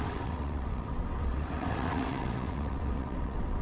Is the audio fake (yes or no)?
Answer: yes